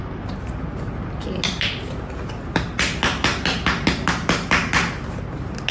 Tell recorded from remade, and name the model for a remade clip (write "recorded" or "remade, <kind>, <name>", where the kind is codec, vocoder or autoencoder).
recorded